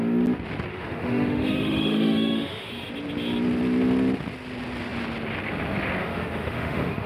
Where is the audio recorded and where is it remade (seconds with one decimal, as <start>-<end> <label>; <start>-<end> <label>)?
0.0-0.7 recorded; 0.7-2.7 remade; 2.7-6.0 recorded; 6.0-7.1 remade